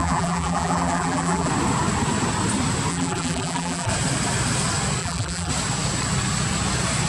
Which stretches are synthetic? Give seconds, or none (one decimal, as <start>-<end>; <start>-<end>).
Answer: 0.0-1.5; 2.9-3.9; 5.0-5.5